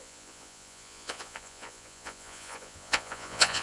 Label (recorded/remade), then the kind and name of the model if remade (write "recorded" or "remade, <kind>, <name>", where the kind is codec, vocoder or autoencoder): remade, vocoder, Vocos